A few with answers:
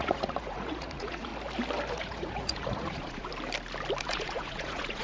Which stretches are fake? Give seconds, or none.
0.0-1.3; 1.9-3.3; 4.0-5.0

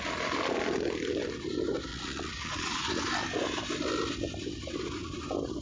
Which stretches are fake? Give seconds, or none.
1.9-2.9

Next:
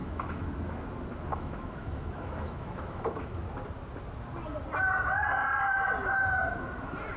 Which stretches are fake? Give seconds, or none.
0.0-0.5; 1.3-3.4

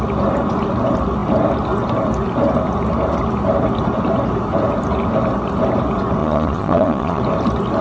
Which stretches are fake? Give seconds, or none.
6.2-7.2